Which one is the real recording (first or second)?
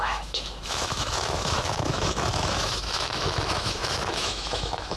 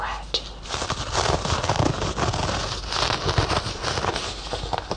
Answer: second